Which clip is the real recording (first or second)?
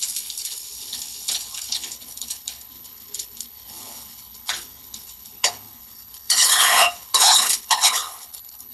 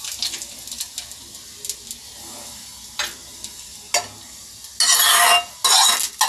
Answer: second